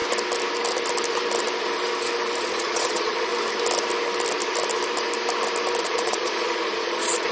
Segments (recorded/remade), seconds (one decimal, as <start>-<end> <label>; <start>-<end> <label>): 0.0-2.4 recorded; 2.4-3.3 remade; 3.3-5.8 recorded; 5.8-7.3 remade